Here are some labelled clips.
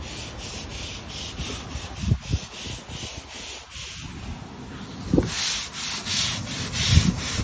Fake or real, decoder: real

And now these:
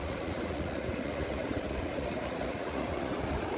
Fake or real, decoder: fake, vocoder, Vocos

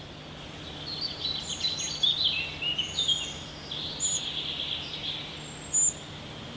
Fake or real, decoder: real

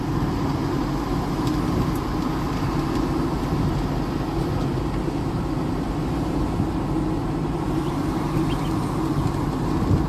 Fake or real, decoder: real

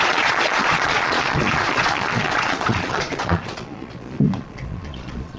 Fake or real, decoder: fake, vocoder, Vocos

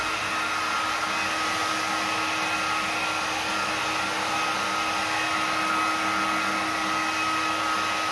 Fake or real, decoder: real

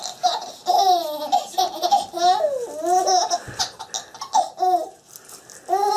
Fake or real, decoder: real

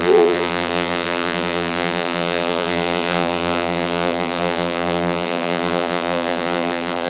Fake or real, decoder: fake, vocoder, BigVGAN v2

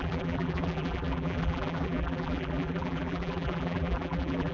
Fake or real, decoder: fake, vocoder, BigVGAN v2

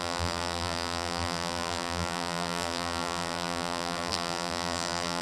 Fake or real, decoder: fake, vocoder, BigVGAN v2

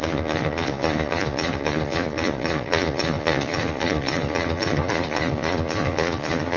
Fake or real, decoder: fake, vocoder, Vocos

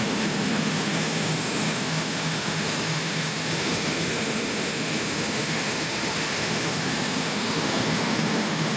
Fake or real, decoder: fake, autoencoder, DAC-VAE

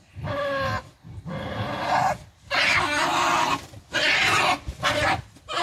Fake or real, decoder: real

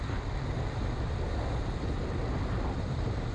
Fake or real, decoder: real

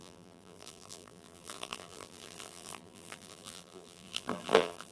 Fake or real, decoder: fake, vocoder, BigVGAN v2